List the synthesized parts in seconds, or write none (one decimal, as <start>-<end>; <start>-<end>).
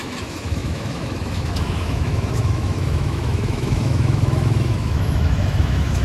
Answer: 0.0-6.0